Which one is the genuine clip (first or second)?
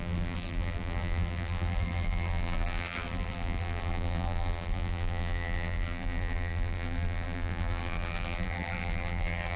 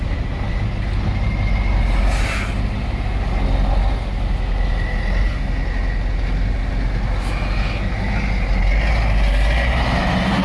second